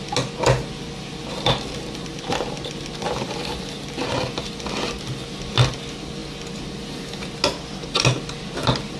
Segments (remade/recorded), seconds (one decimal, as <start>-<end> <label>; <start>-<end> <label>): 0.0-9.0 recorded